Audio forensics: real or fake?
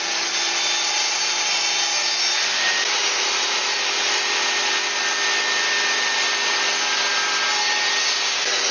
real